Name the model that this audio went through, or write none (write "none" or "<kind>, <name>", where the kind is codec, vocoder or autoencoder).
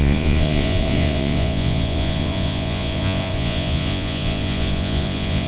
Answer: vocoder, Vocos